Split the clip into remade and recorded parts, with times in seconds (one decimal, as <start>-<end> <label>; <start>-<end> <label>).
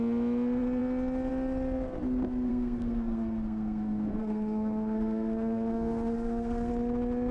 0.0-2.5 recorded; 2.5-6.7 remade; 6.7-7.3 recorded